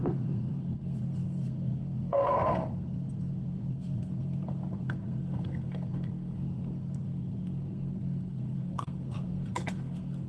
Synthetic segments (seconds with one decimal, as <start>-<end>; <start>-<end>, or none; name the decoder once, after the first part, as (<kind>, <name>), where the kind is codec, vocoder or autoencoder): 0.0-10.3 (codec, SNAC)